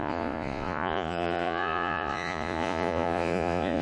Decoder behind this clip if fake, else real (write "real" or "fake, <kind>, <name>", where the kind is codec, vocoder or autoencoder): fake, vocoder, Vocos